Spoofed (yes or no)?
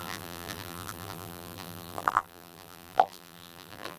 yes